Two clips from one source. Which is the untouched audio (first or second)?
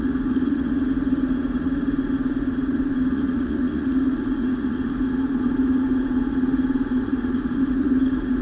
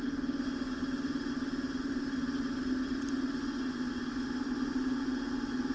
second